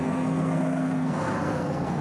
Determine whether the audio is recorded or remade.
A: remade